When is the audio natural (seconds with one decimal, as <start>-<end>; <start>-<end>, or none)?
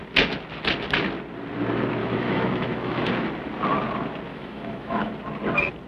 0.0-2.0; 3.1-4.3; 5.1-5.9